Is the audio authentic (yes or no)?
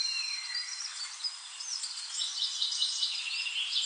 no